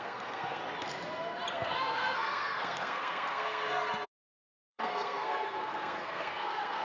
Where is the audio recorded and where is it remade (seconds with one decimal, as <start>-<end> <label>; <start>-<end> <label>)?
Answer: 0.0-0.6 remade; 0.6-1.5 recorded; 1.5-6.8 remade